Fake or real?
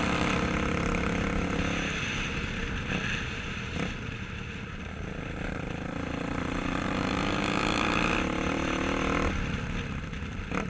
real